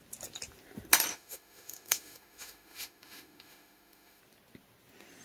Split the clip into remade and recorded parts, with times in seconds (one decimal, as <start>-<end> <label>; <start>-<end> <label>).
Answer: 0.0-1.1 recorded; 1.1-4.2 remade; 4.2-5.2 recorded